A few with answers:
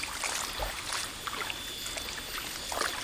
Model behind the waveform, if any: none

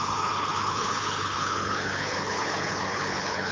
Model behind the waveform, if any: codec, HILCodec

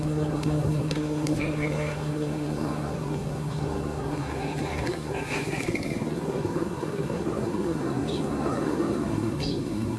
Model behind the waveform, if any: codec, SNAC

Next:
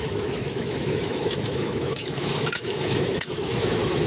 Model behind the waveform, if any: autoencoder, DAC-VAE